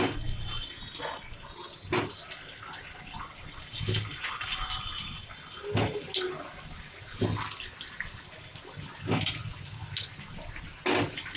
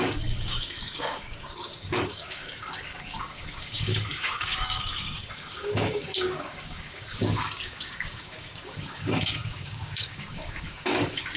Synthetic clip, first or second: second